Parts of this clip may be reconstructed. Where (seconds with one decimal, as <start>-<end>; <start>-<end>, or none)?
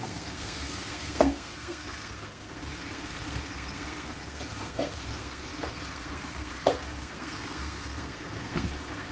0.0-9.1